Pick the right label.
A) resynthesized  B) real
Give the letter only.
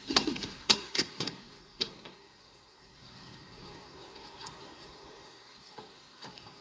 A